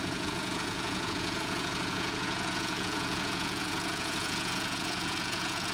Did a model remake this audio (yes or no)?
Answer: yes